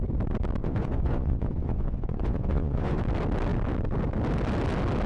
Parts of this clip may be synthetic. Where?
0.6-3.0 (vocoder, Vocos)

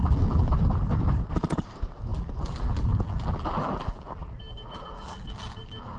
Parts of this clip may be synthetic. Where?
0.0-0.5 (vocoder, BigVGAN v2); 2.1-6.0

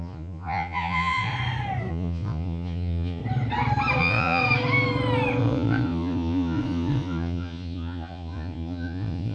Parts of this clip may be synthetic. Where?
0.0-1.3 (vocoder, Vocos); 1.9-3.2; 4.0-4.4; 5.4-9.3

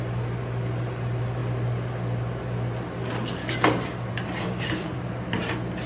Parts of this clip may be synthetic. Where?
none